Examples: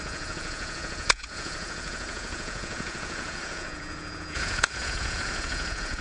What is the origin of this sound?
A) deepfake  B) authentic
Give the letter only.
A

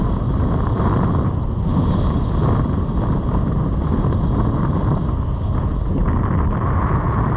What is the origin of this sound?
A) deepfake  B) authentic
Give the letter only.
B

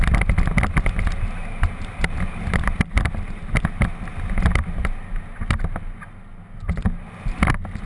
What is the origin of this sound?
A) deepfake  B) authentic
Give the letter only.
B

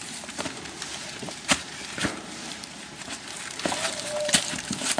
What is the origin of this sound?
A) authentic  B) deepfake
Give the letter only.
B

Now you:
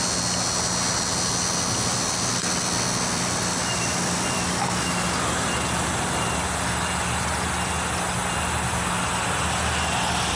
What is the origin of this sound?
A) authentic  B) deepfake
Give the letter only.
A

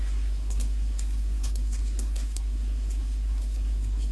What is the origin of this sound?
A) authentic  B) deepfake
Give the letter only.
B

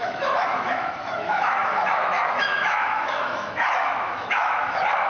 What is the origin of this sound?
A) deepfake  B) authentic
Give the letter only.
A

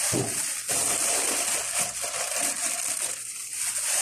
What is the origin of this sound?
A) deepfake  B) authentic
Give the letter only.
B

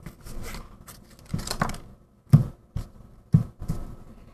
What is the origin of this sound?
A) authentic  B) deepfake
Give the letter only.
A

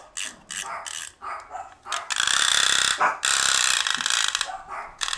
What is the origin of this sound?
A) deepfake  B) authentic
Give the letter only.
B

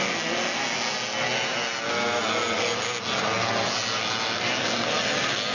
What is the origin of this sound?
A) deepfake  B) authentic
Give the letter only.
B